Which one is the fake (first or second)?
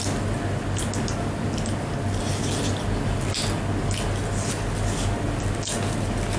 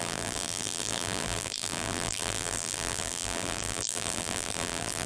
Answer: second